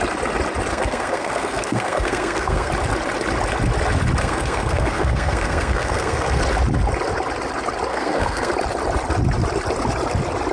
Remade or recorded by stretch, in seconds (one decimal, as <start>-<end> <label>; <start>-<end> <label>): 0.0-0.7 recorded; 0.7-2.7 remade; 2.7-4.2 recorded; 4.2-6.4 remade; 6.4-7.9 recorded; 7.9-8.5 remade; 8.5-10.5 recorded